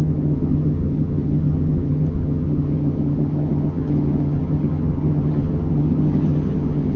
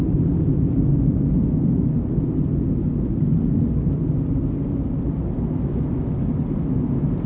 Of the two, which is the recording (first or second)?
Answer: second